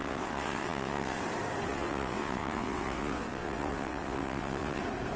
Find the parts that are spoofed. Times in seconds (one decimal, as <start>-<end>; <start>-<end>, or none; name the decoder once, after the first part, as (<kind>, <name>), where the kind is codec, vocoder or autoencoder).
0.0-1.2 (vocoder, WaveNeXt); 1.7-4.8